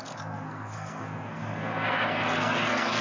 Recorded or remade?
remade